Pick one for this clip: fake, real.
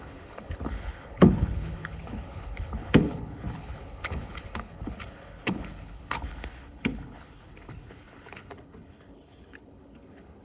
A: fake